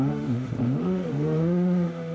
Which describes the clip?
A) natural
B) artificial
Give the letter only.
B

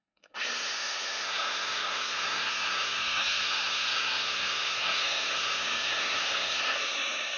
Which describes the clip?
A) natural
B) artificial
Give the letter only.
B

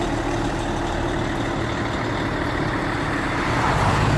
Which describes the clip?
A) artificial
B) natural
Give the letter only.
B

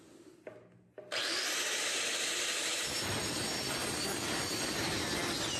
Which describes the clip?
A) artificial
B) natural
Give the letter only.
B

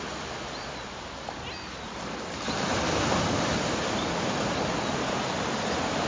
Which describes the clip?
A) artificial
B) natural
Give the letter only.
B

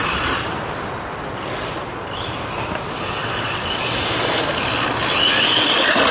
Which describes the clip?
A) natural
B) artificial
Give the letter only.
A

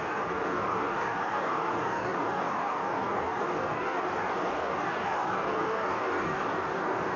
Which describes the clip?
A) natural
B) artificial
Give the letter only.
B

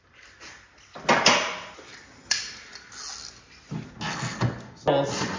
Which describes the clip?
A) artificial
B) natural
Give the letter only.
B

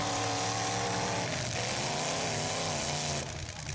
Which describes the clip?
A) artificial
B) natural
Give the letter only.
B